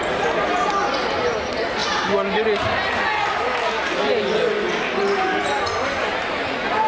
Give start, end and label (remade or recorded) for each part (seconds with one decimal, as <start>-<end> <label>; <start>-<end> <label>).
0.0-6.9 recorded